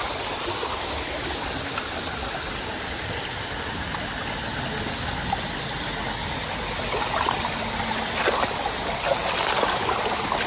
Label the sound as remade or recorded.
recorded